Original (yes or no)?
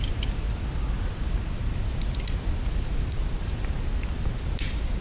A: yes